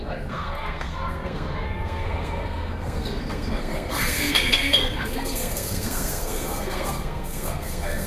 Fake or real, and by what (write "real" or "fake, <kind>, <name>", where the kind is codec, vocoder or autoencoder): fake, codec, SNAC